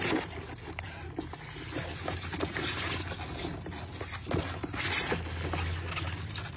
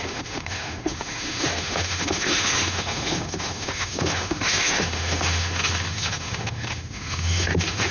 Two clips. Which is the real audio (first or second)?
first